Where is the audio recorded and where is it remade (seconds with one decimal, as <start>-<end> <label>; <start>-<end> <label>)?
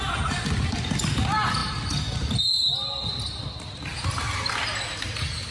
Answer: 0.0-5.5 recorded